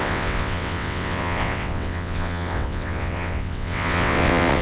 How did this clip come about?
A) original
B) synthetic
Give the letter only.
B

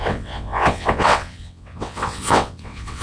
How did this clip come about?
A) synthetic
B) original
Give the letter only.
A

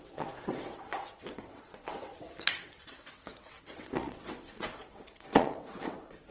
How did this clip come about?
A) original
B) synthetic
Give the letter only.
B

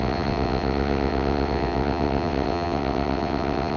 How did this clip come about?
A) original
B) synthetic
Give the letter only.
B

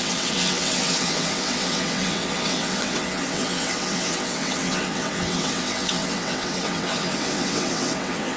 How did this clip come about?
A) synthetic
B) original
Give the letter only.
A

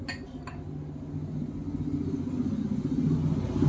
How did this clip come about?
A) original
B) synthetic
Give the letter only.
A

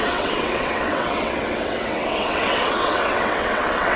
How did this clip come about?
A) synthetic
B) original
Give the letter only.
A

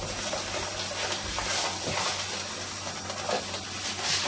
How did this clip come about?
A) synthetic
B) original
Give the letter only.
B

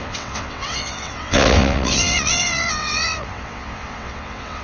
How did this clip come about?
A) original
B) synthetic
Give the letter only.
B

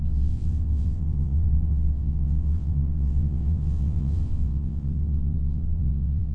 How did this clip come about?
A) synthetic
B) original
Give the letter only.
A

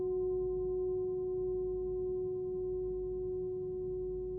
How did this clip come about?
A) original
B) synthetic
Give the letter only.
A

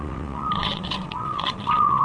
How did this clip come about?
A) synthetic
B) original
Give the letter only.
A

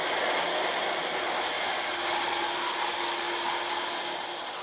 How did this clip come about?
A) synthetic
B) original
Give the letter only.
B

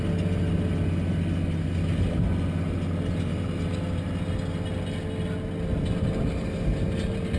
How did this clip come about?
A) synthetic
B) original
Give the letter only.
B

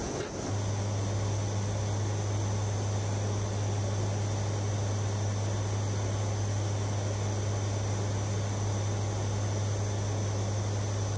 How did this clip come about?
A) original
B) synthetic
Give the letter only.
A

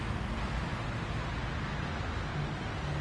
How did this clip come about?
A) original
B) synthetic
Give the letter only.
A